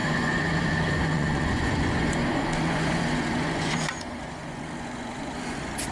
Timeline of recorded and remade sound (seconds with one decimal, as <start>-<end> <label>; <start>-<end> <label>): 0.0-5.9 remade

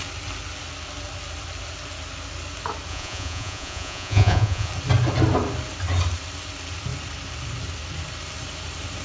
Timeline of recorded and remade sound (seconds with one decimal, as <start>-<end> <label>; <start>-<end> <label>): 0.0-2.9 recorded; 2.9-4.7 remade; 4.7-9.0 recorded

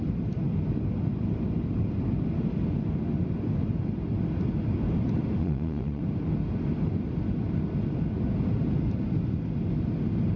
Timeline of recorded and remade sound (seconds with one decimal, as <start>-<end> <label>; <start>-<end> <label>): 0.0-5.4 recorded; 5.4-6.0 remade; 6.0-10.4 recorded

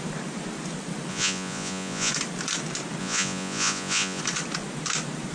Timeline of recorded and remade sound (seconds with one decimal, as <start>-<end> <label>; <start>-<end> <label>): 0.0-1.1 recorded; 1.1-2.1 remade; 2.1-3.0 recorded; 3.0-4.2 remade; 4.2-5.3 recorded

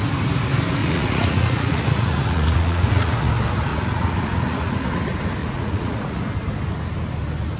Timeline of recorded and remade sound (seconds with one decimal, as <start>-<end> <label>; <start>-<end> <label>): 0.0-0.8 recorded; 0.8-3.3 remade; 3.3-3.7 recorded; 3.7-5.0 remade; 5.0-5.4 recorded; 5.4-6.2 remade; 6.2-7.6 recorded

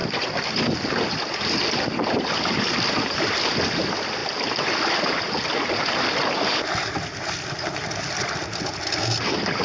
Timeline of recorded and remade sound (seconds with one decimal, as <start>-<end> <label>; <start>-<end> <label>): 0.0-9.6 recorded

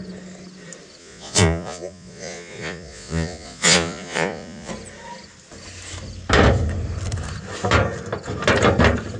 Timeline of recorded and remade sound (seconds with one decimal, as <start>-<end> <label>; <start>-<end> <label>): 0.0-1.0 recorded; 1.0-4.7 remade; 4.7-9.2 recorded

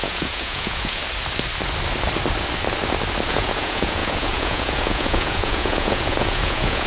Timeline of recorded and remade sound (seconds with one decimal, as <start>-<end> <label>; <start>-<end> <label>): 0.0-1.0 remade; 1.0-3.3 recorded; 3.3-6.9 remade